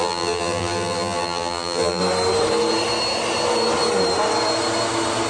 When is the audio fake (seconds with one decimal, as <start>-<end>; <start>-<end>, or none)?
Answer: 0.0-2.0